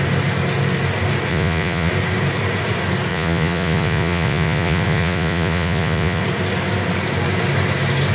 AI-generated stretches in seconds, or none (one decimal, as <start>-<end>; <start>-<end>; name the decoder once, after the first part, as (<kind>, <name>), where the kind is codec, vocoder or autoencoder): 1.3-1.9 (vocoder, Vocos); 3.1-6.2